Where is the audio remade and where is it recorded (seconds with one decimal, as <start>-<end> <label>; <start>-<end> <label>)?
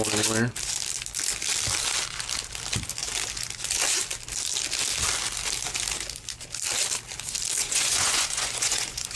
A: 0.0-7.6 recorded; 7.6-9.2 remade